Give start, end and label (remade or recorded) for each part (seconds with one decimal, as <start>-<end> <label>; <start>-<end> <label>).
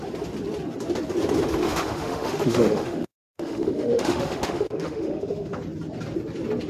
0.0-1.6 recorded; 1.6-5.6 remade; 5.6-6.7 recorded